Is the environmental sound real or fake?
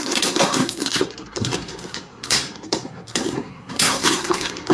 fake